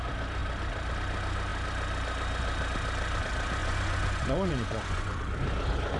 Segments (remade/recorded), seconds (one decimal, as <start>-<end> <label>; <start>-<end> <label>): 0.0-3.6 recorded; 3.6-5.2 remade; 5.2-6.0 recorded